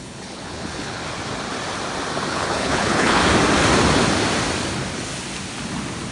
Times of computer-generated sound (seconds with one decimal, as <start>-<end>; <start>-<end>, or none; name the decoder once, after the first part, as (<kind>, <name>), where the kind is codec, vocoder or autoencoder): 0.0-1.0 (codec, HILCodec); 2.3-3.2